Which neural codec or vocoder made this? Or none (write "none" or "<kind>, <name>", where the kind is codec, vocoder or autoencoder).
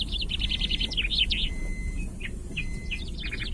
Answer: none